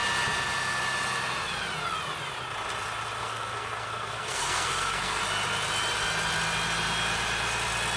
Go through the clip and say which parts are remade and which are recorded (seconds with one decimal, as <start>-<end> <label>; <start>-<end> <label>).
0.0-3.2 recorded; 3.2-5.2 remade; 5.2-8.0 recorded